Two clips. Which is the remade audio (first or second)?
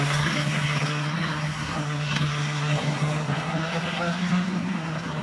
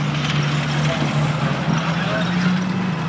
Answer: first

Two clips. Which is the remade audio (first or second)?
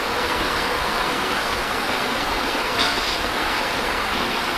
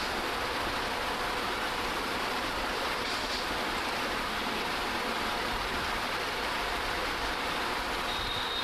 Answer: first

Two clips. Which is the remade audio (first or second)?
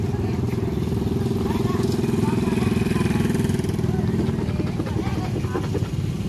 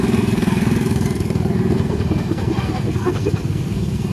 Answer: second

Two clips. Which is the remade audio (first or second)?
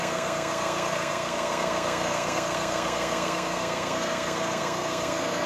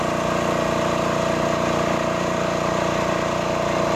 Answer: first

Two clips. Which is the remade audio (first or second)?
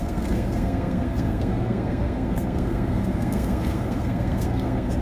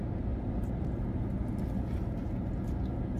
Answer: first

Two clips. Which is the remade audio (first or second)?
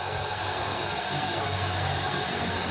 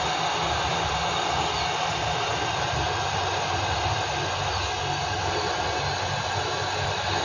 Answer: first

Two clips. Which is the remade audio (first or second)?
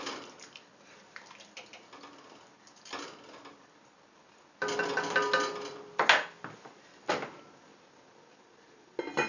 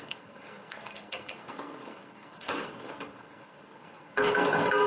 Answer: second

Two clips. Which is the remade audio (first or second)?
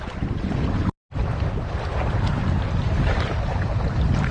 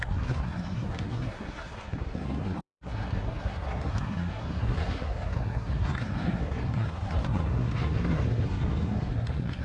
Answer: second